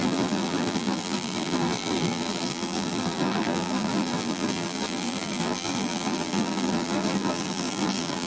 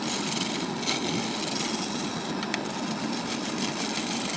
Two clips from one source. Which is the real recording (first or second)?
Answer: second